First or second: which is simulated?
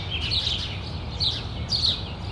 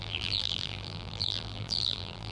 second